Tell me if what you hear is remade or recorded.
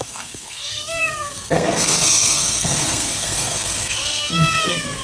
remade